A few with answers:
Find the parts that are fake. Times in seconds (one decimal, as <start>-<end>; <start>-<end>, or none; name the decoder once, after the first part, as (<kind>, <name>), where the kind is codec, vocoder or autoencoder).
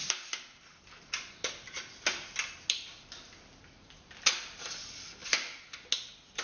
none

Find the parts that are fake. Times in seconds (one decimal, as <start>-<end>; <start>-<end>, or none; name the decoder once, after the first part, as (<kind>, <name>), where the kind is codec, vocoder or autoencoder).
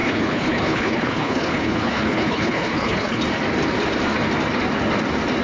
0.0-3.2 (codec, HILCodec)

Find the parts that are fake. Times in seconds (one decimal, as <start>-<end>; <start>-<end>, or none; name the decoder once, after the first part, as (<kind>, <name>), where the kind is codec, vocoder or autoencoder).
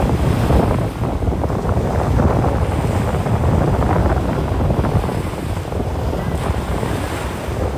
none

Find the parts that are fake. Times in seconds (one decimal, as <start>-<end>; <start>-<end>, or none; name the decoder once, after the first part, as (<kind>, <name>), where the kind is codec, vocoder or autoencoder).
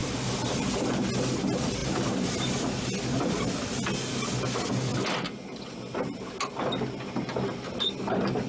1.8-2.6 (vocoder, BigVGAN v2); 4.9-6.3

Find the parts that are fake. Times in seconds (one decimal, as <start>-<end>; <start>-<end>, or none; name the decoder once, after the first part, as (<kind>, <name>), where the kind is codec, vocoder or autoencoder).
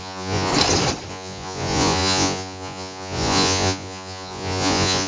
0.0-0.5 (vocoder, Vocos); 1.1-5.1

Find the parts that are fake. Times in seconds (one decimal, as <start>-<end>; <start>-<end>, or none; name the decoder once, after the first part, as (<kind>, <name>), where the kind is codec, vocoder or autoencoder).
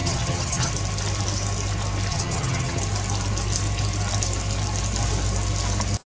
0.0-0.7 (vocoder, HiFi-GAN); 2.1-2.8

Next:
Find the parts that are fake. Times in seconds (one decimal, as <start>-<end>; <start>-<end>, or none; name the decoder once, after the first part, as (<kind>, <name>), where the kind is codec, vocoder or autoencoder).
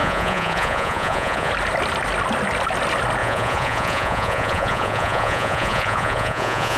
0.0-1.5 (vocoder, Vocos); 3.2-6.8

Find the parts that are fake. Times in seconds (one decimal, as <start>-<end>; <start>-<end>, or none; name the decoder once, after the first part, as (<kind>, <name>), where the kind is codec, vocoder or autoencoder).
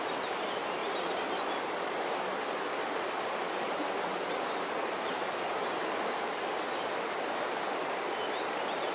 none